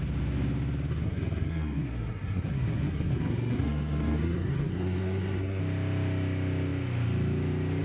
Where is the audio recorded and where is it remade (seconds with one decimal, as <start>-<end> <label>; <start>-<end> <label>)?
0.0-0.9 recorded; 0.9-5.6 remade; 5.6-7.8 recorded